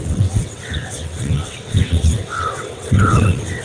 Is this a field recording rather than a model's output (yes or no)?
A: no